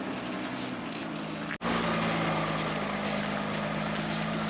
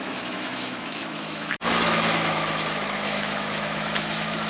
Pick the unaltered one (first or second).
first